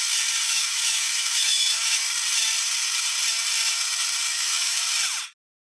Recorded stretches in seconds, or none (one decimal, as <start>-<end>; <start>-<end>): 0.0-0.4; 2.0-4.3; 4.8-5.7